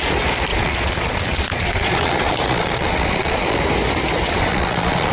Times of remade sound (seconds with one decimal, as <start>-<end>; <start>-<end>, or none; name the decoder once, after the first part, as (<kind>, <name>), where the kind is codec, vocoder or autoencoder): 0.5-3.6 (vocoder, Vocos); 4.2-5.1